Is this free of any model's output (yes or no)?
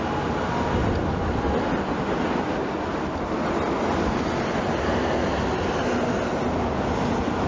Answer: yes